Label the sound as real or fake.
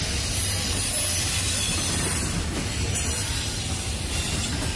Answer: real